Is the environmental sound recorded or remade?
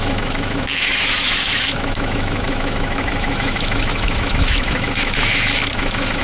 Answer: remade